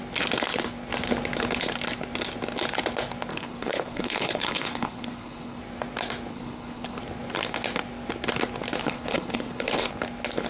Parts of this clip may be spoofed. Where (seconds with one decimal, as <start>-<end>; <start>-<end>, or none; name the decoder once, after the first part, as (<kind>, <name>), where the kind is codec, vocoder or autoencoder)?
3.3-5.6 (codec, HILCodec); 6.3-7.0; 8.8-9.9